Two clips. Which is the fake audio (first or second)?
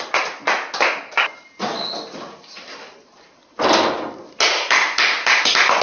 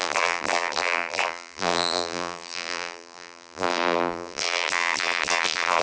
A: second